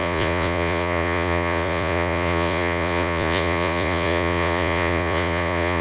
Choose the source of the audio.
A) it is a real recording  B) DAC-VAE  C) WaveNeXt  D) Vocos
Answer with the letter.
D